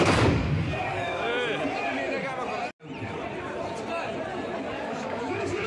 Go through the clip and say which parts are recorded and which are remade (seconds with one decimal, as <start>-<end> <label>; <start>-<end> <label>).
0.0-1.3 remade; 1.3-4.7 recorded; 4.7-5.7 remade